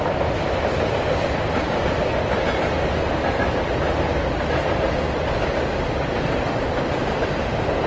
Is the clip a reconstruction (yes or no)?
no